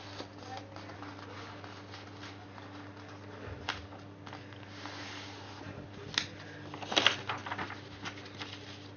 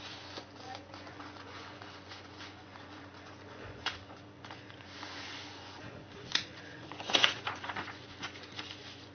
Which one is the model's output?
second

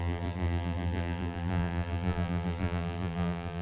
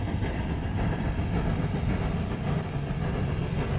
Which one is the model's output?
first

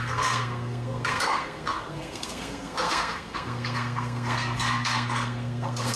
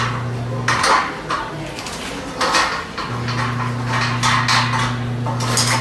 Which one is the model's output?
first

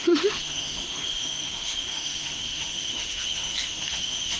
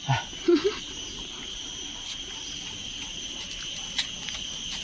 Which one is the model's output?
first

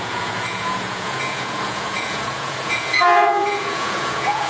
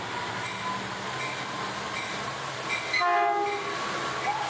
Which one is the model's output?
first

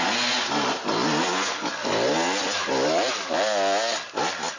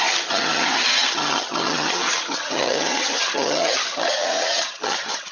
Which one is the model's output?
second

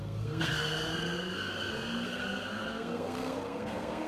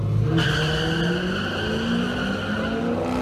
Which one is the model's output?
first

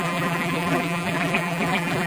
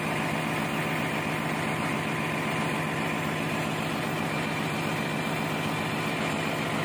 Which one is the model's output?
first